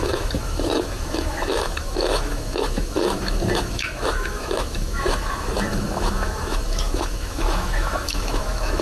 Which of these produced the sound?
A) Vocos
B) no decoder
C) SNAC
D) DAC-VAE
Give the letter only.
D